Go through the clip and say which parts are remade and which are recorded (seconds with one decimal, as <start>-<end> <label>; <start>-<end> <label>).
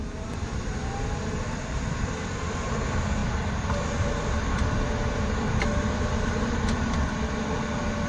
0.0-8.1 recorded